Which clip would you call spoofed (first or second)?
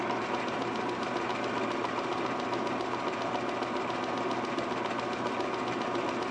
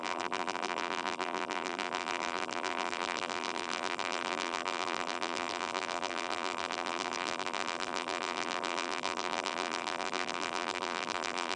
second